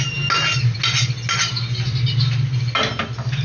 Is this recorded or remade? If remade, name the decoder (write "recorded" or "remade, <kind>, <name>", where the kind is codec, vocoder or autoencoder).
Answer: recorded